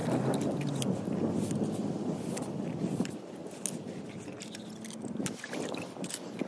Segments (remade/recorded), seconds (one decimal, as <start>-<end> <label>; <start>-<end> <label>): 0.0-6.5 recorded